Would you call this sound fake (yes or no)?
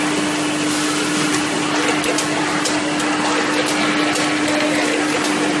no